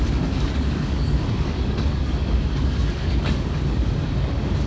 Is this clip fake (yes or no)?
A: yes